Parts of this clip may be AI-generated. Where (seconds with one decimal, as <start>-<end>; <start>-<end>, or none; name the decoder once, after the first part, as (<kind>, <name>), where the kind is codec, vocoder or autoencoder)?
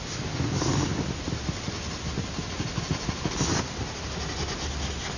none